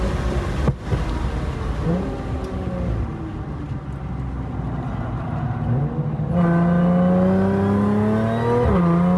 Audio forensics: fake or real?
real